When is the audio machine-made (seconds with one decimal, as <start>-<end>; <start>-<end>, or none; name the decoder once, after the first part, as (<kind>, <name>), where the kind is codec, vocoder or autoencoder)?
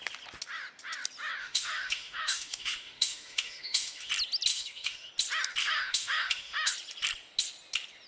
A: 1.4-4.1 (autoencoder, DAC-VAE); 4.5-5.1; 5.6-6.7